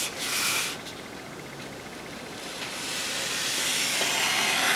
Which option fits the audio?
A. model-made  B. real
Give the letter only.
B